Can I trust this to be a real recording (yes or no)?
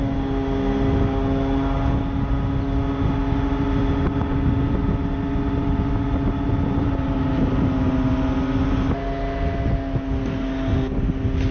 yes